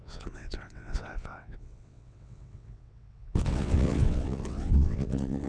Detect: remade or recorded remade